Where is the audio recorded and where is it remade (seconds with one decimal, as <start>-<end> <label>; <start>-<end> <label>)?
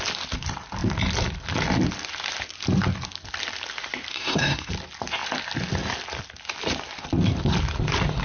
0.0-4.1 recorded; 4.1-4.7 remade; 4.7-8.2 recorded